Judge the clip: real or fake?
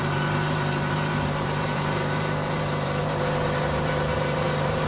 fake